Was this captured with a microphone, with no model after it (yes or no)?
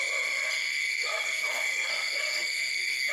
no